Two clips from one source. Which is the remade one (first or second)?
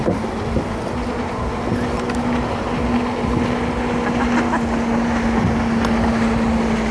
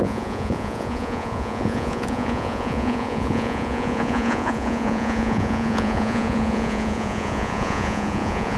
second